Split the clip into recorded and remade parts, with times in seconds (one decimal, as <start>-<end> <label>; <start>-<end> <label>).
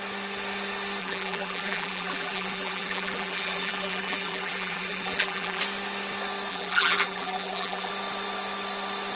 0.0-1.0 recorded; 1.0-5.6 remade; 5.6-6.5 recorded; 6.5-7.9 remade; 7.9-9.2 recorded